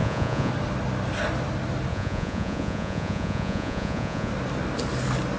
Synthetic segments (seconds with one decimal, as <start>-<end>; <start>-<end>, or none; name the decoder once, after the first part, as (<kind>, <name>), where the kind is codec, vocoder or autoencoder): 0.0-0.5 (vocoder, Vocos); 1.9-4.3